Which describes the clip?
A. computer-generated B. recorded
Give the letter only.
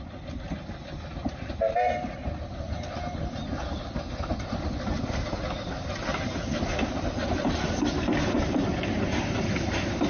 B